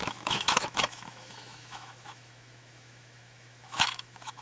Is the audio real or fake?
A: fake